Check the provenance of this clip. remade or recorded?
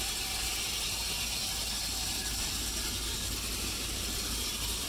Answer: recorded